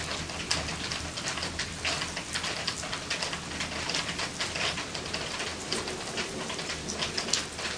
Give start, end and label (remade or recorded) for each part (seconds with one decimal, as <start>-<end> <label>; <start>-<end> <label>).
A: 0.0-5.5 recorded; 5.5-6.4 remade; 6.4-7.8 recorded